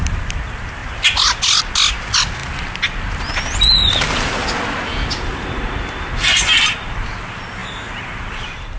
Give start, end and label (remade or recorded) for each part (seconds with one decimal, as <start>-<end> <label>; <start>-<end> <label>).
0.0-8.8 recorded

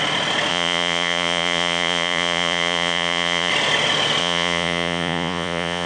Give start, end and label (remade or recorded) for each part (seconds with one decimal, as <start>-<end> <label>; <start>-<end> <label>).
0.0-0.5 recorded; 0.5-3.5 remade; 3.5-4.2 recorded; 4.2-5.9 remade

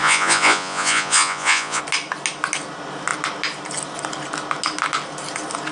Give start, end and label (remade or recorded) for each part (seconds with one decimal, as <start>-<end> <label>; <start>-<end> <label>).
0.0-1.8 remade; 1.8-5.7 recorded

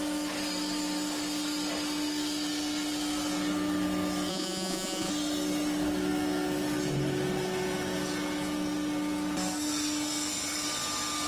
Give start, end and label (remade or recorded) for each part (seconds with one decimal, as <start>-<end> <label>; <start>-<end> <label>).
0.0-4.3 recorded; 4.3-5.1 remade; 5.1-11.3 recorded

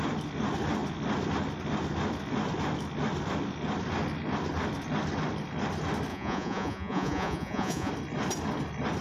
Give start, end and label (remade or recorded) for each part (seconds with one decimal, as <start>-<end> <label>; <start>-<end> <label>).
0.0-6.1 recorded; 6.1-7.9 remade; 7.9-9.0 recorded